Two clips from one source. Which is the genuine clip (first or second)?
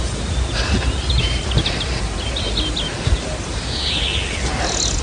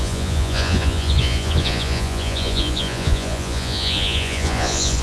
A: first